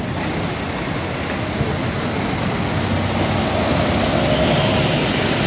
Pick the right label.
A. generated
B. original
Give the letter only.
B